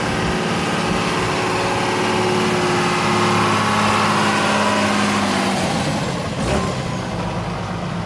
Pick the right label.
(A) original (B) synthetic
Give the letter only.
A